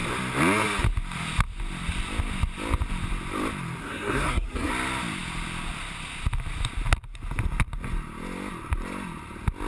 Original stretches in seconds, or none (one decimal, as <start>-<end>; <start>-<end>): 0.0-3.8; 4.7-9.7